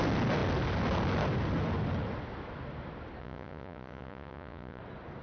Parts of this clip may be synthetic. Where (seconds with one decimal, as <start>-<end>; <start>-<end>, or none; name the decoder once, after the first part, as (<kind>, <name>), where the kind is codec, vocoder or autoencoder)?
3.2-4.8 (vocoder, Vocos)